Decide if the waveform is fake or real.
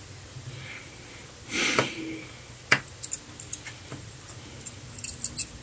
real